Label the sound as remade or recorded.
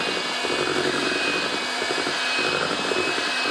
recorded